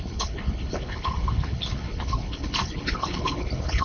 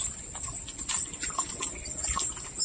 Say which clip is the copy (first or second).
first